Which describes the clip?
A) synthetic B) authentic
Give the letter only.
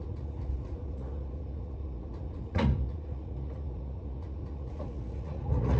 A